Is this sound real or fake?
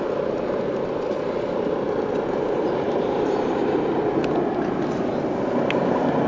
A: real